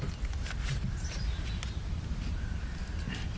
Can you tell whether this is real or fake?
real